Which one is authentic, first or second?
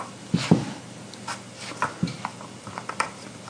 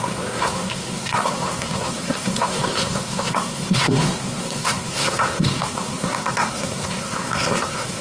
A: first